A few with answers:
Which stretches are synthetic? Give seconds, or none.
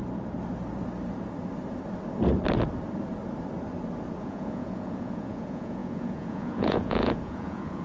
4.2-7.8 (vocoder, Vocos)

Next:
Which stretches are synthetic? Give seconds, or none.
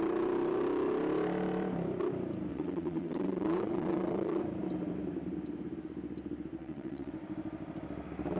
2.5-4.4 (vocoder, WaveNeXt); 6.6-7.1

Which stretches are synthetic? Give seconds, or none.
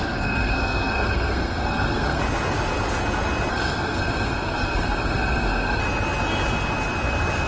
0.0-2.2 (codec, SNAC); 3.5-5.8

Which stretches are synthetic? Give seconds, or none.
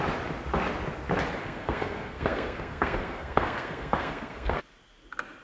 1.4-4.6 (codec, SNAC)